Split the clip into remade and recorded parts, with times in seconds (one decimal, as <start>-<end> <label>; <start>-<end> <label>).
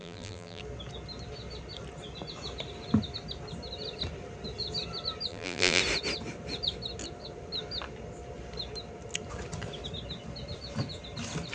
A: 0.0-0.6 remade; 0.6-5.3 recorded; 5.3-5.8 remade; 5.8-11.5 recorded